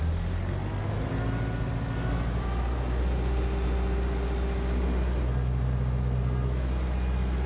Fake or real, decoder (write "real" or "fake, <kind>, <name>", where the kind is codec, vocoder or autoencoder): real